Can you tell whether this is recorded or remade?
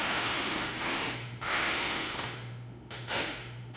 remade